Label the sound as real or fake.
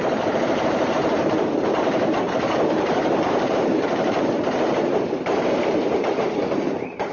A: fake